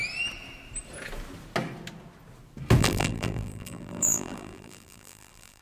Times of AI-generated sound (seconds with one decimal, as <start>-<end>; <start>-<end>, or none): 2.8-5.6